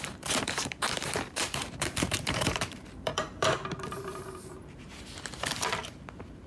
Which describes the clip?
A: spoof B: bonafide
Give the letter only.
A